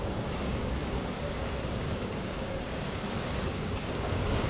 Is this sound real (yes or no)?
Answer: no